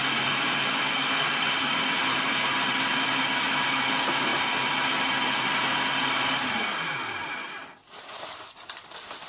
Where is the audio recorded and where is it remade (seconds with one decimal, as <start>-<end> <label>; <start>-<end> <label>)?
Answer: 0.0-0.7 remade; 0.7-9.3 recorded